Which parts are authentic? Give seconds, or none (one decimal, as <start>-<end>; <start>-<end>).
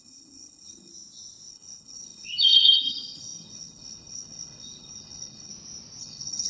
0.9-1.5; 5.5-6.0